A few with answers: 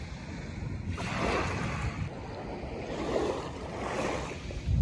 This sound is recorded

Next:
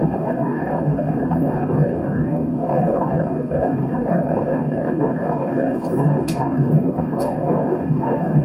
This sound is remade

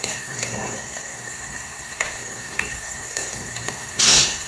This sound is remade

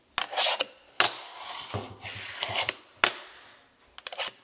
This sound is recorded